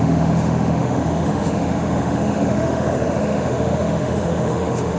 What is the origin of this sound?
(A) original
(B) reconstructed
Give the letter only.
B